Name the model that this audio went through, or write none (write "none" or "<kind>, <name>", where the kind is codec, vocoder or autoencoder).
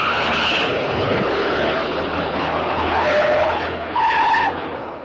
codec, HILCodec